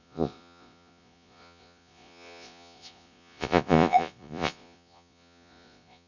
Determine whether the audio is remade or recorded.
remade